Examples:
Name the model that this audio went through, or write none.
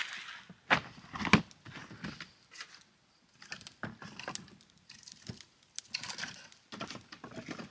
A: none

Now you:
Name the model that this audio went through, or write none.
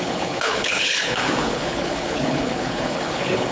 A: codec, HILCodec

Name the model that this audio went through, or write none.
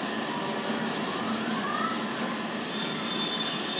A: none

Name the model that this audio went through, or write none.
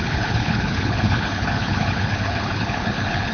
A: codec, HILCodec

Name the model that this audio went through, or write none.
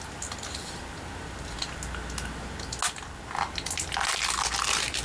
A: none